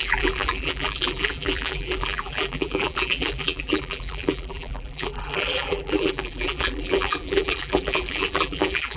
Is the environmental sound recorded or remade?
remade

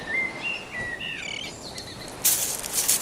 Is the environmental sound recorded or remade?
recorded